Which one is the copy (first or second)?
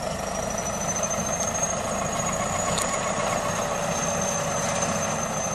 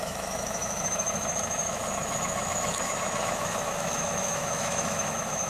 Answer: second